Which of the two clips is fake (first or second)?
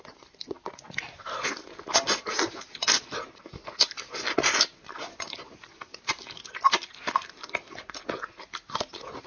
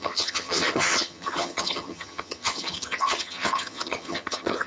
second